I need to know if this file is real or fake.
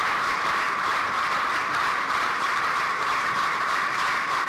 fake